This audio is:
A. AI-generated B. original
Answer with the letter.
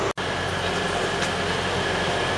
B